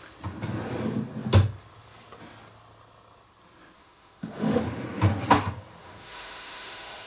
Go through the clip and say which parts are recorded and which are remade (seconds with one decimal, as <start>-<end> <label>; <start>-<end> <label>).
0.0-3.8 recorded; 3.8-4.6 remade; 4.6-5.8 recorded; 5.8-7.1 remade